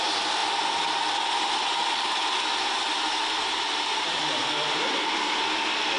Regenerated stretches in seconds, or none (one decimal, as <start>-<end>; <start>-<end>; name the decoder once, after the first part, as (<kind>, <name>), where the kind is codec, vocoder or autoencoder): 1.8-5.4 (vocoder, BigVGAN v2)